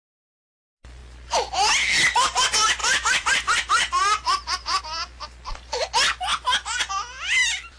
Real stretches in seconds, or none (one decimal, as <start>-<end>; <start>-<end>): 0.0-2.8; 4.8-7.8